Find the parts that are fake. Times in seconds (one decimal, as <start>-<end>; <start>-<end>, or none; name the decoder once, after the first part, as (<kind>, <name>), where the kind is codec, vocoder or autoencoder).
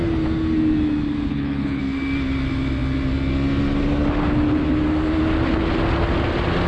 1.3-1.8 (codec, HILCodec)